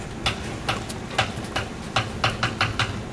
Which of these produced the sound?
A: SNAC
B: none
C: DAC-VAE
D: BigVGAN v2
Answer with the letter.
B